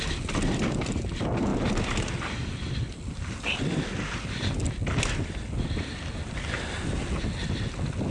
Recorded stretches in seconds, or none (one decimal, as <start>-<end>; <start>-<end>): 0.0-8.1